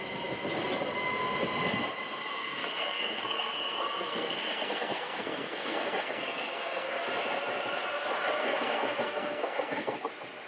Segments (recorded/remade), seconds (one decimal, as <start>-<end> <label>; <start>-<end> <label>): 0.0-2.3 recorded; 2.3-7.0 remade; 7.0-8.4 recorded; 8.4-10.1 remade; 10.1-10.5 recorded